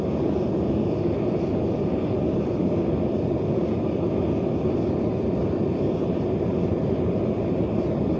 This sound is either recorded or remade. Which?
recorded